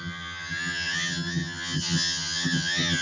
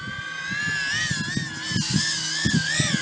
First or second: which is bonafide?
second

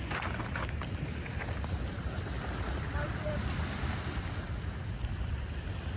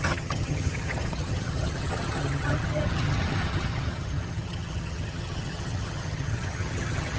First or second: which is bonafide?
first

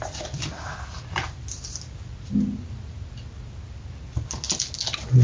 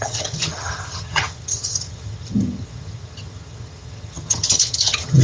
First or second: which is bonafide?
first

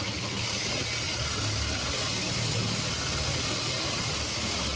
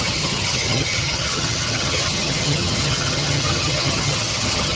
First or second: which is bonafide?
first